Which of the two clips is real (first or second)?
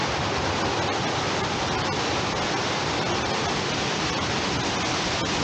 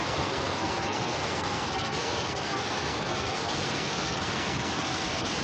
first